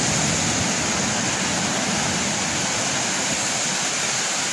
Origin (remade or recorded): recorded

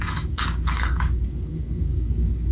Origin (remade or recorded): remade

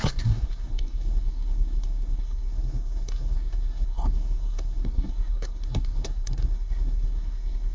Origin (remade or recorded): remade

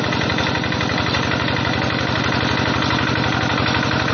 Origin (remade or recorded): recorded